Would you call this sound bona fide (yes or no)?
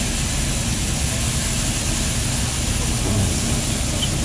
yes